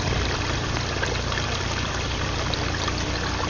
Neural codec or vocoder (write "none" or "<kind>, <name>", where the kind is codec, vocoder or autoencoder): none